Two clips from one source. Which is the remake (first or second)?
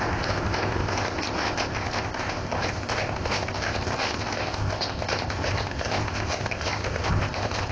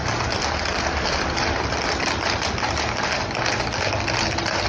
first